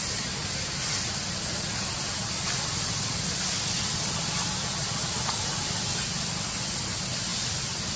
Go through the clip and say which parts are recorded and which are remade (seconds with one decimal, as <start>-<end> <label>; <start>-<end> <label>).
0.0-8.0 recorded

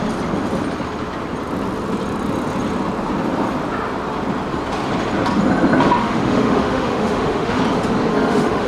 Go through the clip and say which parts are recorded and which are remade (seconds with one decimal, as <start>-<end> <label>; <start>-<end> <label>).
0.0-6.0 recorded; 6.0-7.6 remade; 7.6-8.1 recorded; 8.1-8.7 remade

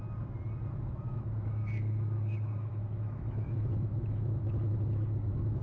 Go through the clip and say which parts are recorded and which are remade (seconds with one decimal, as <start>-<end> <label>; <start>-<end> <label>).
0.0-0.9 recorded; 0.9-5.6 remade

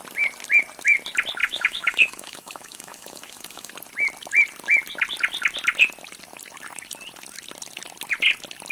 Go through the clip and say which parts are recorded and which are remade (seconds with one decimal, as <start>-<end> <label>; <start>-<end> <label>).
0.0-1.4 recorded; 1.4-3.7 remade; 3.7-8.7 recorded

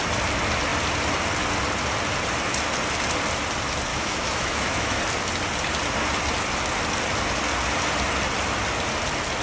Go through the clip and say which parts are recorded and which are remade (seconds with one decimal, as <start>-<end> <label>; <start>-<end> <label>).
0.0-3.9 recorded; 3.9-5.0 remade; 5.0-9.4 recorded

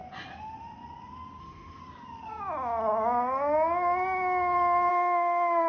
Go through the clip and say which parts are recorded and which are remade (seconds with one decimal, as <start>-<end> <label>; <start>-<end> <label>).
0.0-1.4 recorded; 1.4-1.8 remade; 1.8-4.9 recorded; 4.9-5.7 remade

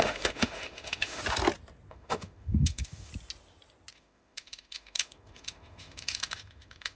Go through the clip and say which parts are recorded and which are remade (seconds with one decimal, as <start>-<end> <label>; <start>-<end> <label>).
0.0-1.2 remade; 1.2-1.9 recorded; 1.9-3.1 remade; 3.1-3.9 recorded; 3.9-7.0 remade